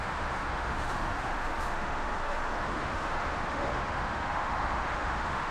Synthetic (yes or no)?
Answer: yes